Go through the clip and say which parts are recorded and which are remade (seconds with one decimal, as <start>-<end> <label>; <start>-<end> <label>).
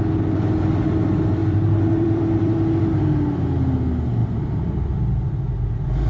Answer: 0.0-1.4 recorded; 1.4-2.8 remade; 2.8-4.2 recorded; 4.2-5.0 remade; 5.0-6.1 recorded